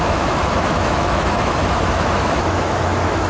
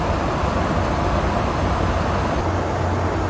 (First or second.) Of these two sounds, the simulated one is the first